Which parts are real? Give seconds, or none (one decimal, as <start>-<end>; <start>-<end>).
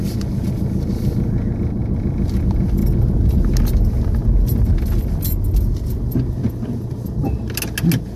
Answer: 0.0-8.2